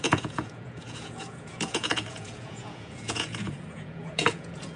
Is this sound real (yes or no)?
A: no